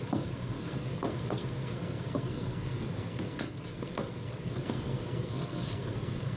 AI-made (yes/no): yes